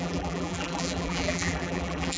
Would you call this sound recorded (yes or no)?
no